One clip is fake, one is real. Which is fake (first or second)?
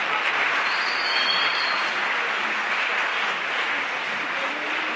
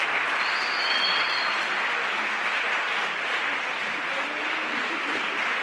second